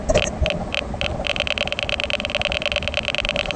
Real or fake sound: real